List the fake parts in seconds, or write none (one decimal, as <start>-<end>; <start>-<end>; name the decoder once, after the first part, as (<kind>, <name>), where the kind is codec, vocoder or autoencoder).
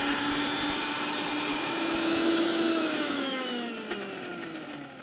1.5-3.7 (autoencoder, DAC-VAE)